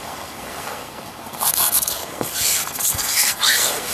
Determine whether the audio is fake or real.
fake